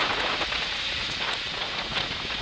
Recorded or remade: remade